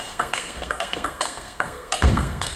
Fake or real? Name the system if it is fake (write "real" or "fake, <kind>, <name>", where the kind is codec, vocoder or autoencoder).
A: fake, codec, SNAC